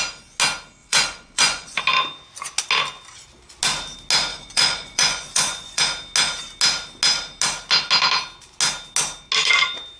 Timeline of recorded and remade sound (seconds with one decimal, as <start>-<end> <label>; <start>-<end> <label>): 0.0-0.8 recorded; 0.8-1.8 remade; 1.8-4.3 recorded; 4.3-5.8 remade; 5.8-10.0 recorded